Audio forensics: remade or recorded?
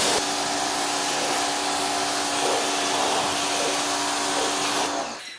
recorded